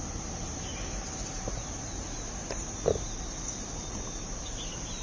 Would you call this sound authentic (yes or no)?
yes